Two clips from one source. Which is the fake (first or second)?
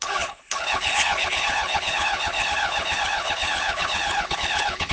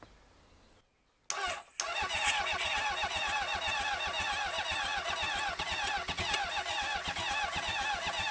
first